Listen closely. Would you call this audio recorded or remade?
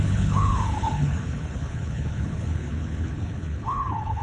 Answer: remade